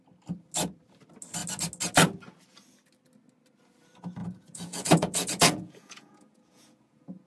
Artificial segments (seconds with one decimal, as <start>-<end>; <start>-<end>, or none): 4.2-7.3